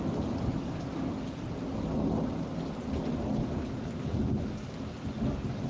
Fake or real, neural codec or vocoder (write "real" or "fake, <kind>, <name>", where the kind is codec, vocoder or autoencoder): real